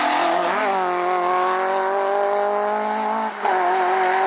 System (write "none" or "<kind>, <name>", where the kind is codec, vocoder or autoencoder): none